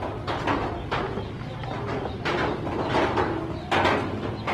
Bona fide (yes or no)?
yes